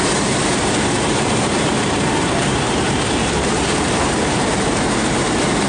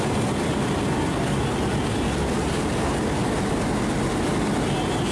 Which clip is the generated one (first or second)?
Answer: first